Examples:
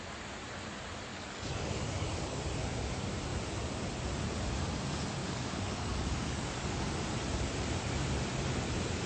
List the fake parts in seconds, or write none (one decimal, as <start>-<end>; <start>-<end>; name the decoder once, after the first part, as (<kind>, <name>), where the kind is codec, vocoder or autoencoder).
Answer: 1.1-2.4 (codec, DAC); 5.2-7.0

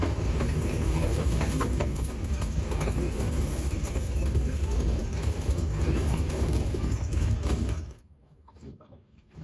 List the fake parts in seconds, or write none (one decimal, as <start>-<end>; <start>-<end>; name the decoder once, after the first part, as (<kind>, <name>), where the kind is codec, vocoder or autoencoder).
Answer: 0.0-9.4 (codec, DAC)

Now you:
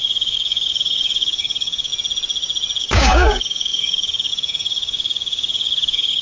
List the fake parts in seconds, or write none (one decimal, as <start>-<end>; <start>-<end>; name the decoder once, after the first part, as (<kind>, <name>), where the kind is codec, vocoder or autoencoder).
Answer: 0.0-1.9 (codec, DAC); 2.8-6.2

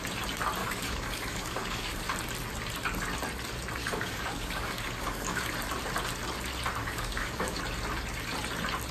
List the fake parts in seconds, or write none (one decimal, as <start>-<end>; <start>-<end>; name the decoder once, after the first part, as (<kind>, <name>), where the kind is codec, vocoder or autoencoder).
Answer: 0.6-2.0 (codec, DAC); 3.8-5.5; 6.8-7.6